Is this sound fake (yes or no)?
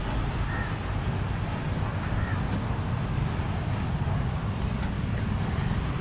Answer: no